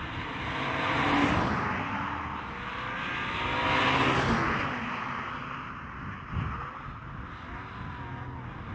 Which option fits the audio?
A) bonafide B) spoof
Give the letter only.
A